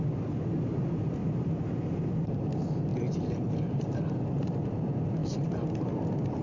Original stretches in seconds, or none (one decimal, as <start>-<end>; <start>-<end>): 0.0-1.2; 2.5-2.9; 4.7-5.2; 5.9-6.4